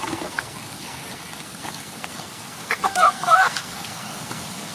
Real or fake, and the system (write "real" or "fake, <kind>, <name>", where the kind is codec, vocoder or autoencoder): fake, codec, SNAC